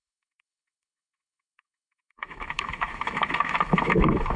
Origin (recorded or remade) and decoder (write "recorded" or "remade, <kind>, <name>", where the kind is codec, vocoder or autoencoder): remade, autoencoder, DAC-VAE